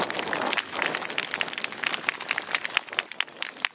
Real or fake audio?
real